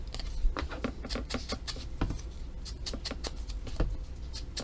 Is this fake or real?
real